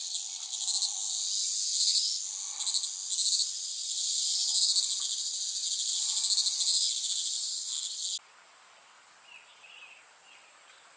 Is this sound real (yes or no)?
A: yes